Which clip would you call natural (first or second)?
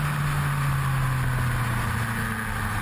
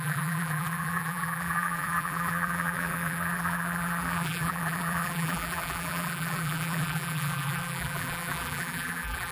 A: first